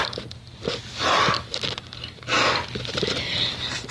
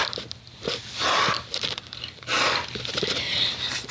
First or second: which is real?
first